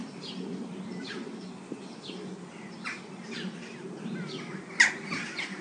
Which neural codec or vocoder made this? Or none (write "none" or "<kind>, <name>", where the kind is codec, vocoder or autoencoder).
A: none